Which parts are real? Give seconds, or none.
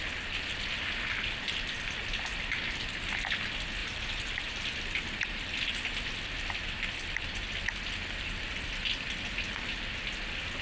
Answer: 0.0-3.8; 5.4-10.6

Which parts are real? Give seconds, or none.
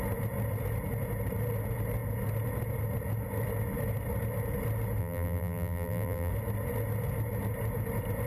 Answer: 0.0-5.0; 6.3-8.3